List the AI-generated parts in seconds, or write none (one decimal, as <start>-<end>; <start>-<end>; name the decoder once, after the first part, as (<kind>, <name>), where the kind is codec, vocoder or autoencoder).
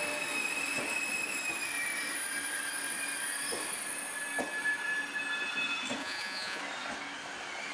6.0-6.6 (vocoder, Vocos)